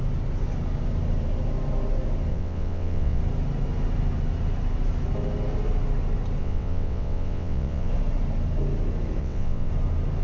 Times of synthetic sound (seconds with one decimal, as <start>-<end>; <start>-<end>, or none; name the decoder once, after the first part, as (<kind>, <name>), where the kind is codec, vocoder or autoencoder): 2.3-3.2 (vocoder, WaveNeXt); 6.4-7.9; 9.2-9.7

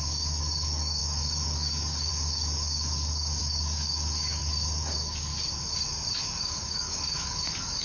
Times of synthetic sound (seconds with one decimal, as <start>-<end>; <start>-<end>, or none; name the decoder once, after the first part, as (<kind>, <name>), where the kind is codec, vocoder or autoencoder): 0.0-5.3 (codec, DAC); 6.4-7.8

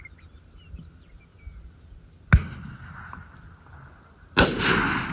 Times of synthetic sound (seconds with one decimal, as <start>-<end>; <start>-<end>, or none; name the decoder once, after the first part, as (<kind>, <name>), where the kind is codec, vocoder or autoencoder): none

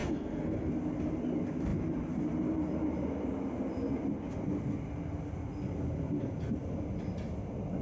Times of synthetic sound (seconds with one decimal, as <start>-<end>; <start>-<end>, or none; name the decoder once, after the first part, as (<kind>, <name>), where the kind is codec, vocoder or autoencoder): 0.0-0.7 (codec, SNAC)

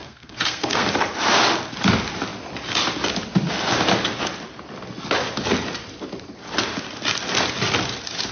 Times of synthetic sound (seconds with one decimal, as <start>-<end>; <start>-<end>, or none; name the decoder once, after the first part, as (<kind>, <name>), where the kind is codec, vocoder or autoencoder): 0.0-0.9 (codec, SNAC)

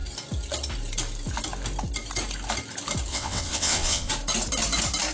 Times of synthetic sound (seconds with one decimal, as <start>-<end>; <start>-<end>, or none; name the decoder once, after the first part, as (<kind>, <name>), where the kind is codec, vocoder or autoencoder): 3.1-4.1 (vocoder, WaveNeXt)

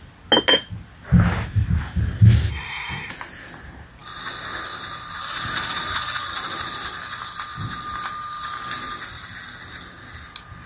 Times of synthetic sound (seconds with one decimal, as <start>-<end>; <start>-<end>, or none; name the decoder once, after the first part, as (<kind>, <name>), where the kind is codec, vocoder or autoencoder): 2.5-3.1 (codec, SNAC)